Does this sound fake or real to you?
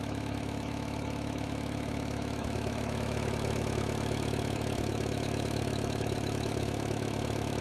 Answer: fake